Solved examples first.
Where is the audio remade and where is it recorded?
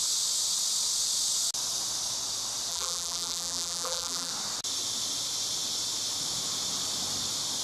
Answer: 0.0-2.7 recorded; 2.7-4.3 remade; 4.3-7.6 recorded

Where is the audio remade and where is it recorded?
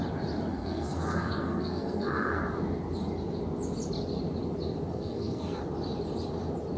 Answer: 0.0-0.5 recorded; 0.5-2.4 remade; 2.4-4.9 recorded; 4.9-5.6 remade; 5.6-6.8 recorded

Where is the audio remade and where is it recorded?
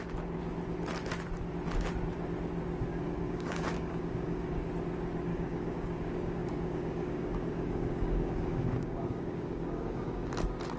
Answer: 0.0-2.9 recorded; 2.9-4.7 remade; 4.7-5.3 recorded; 5.3-10.3 remade; 10.3-10.8 recorded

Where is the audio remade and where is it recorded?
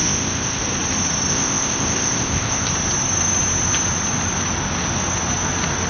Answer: 0.0-0.6 remade; 0.6-1.3 recorded; 1.3-2.7 remade; 2.7-5.9 recorded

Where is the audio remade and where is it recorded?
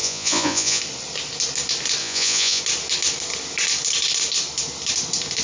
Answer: 0.0-0.8 remade; 0.8-2.0 recorded; 2.0-2.6 remade; 2.6-5.4 recorded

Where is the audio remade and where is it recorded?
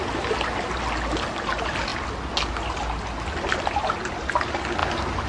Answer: 0.0-5.3 recorded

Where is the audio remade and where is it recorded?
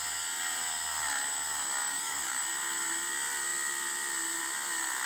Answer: 0.0-1.8 recorded; 1.8-2.4 remade; 2.4-5.1 recorded